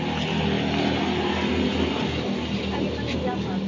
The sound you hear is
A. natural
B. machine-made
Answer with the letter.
A